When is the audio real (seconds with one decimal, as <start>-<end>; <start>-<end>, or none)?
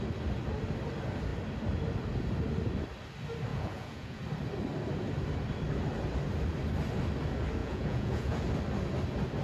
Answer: 0.0-3.5; 4.2-7.6; 8.4-9.4